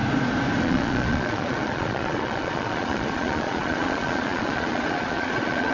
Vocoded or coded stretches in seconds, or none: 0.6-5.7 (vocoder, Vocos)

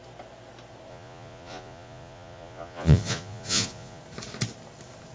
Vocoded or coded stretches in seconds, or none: 0.9-4.0 (vocoder, Vocos)